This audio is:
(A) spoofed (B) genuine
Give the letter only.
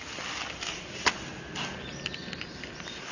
B